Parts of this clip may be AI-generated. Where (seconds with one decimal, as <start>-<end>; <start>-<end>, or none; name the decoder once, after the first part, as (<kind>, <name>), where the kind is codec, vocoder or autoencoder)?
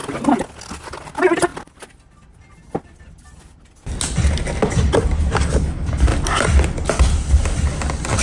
none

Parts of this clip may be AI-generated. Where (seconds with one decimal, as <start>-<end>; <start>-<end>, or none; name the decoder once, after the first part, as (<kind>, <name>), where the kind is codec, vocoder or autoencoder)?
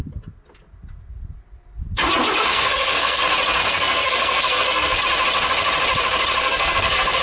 2.5-3.2 (codec, SNAC); 3.6-5.0; 6.4-7.2